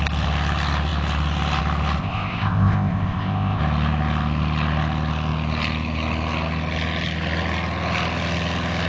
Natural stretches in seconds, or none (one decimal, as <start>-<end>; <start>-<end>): 0.0-2.0; 3.6-8.9